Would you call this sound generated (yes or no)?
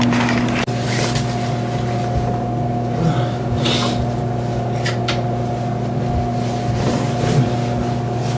no